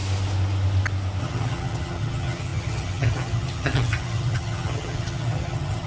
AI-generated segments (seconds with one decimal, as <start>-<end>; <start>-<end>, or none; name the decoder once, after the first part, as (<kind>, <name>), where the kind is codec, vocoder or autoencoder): 1.2-5.9 (vocoder, HiFi-GAN)